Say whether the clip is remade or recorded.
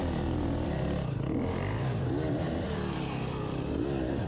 remade